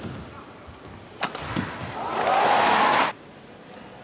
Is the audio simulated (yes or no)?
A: no